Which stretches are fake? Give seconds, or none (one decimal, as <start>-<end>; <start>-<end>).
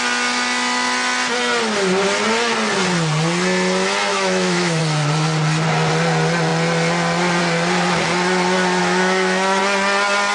4.1-4.8; 8.8-9.6